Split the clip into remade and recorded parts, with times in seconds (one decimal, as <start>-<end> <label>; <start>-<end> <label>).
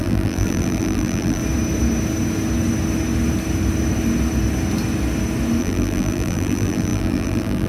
0.0-1.4 remade; 1.4-5.6 recorded; 5.6-7.7 remade